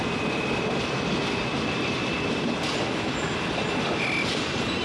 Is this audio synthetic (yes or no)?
no